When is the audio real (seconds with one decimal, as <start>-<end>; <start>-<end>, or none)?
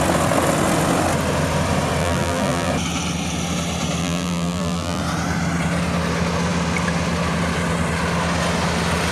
0.0-2.0; 2.7-4.0; 5.0-9.1